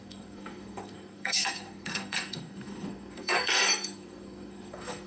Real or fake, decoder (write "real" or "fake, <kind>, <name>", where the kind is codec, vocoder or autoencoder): fake, codec, SNAC